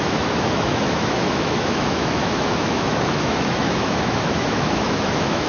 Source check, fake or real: fake